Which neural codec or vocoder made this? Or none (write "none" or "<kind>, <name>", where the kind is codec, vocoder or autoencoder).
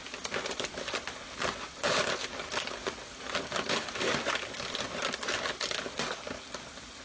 none